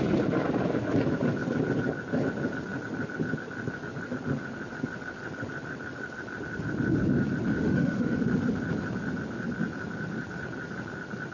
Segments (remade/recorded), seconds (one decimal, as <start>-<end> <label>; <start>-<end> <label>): 0.0-7.6 recorded; 7.6-8.2 remade; 8.2-11.3 recorded